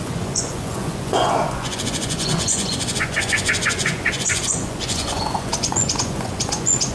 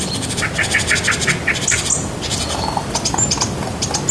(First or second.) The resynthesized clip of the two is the first